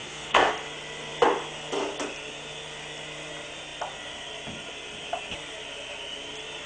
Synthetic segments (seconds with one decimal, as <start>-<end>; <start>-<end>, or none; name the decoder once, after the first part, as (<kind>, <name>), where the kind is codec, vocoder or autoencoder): 0.0-0.5 (codec, SNAC)